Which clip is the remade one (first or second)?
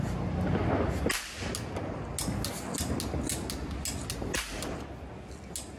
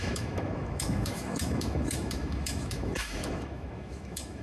second